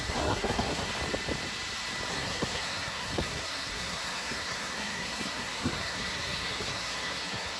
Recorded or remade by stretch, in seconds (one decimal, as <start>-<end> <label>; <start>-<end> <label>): 0.0-0.9 remade; 0.9-2.1 recorded; 2.1-7.6 remade